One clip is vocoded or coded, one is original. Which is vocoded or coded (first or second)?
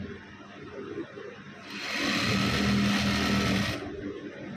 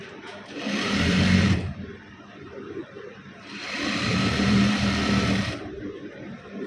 second